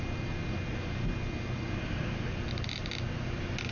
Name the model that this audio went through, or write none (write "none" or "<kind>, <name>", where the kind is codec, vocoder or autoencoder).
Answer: none